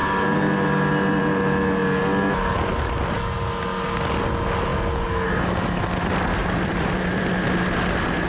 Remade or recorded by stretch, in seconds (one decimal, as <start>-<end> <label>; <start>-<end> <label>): 0.0-6.4 recorded; 6.4-7.2 remade; 7.2-8.3 recorded